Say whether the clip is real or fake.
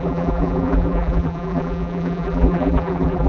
fake